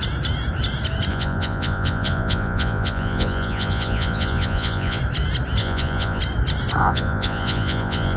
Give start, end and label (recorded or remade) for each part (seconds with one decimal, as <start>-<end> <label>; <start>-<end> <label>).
0.0-1.1 recorded; 1.1-5.0 remade; 5.0-5.6 recorded; 5.6-6.2 remade; 6.2-6.8 recorded; 6.8-8.2 remade